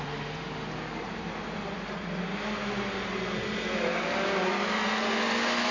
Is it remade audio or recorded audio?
recorded